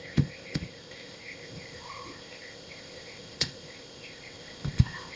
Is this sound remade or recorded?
remade